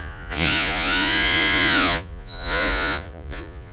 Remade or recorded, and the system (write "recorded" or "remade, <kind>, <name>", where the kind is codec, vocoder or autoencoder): remade, vocoder, Vocos